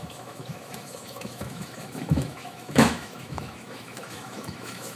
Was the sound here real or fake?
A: fake